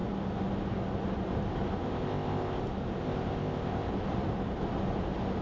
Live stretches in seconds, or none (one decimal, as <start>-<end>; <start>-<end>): 0.0-1.8; 2.6-3.0; 3.9-5.4